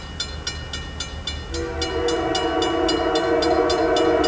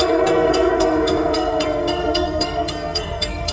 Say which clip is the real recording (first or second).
first